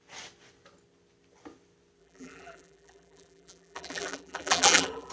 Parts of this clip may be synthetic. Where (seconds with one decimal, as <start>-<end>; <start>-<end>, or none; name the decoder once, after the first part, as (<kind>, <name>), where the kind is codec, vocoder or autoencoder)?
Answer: 2.0-5.1 (vocoder, BigVGAN v2)